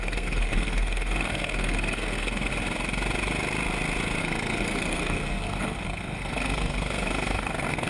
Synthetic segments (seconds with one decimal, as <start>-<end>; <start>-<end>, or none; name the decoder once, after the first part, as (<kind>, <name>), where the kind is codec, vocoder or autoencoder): 0.0-2.5 (codec, SNAC); 4.2-7.9